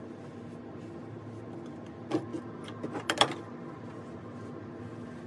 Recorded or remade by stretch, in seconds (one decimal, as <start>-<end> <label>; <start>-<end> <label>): 0.0-5.3 recorded